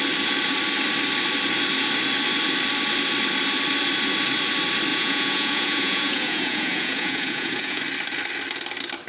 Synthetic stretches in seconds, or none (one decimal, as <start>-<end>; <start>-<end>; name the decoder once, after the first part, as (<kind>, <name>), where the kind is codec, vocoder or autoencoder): 4.9-7.8 (vocoder, Vocos)